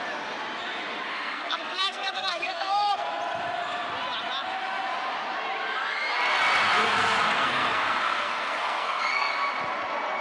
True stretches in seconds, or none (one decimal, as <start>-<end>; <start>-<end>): 0.0-1.1; 3.1-6.8; 9.3-10.2

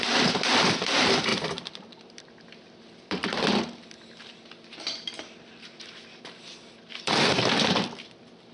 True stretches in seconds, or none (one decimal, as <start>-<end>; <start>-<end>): none

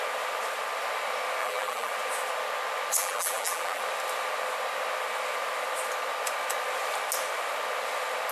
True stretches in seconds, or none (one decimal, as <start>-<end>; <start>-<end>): 0.0-1.4; 1.9-3.0; 3.8-8.3

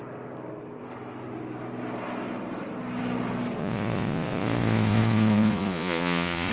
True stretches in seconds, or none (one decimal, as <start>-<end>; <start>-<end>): 0.0-3.6